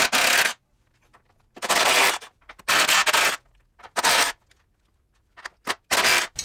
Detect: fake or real real